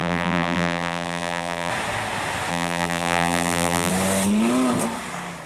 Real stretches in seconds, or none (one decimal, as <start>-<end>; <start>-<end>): 1.7-2.5; 3.9-5.5